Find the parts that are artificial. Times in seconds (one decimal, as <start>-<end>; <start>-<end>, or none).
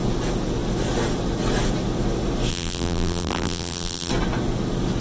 2.5-4.1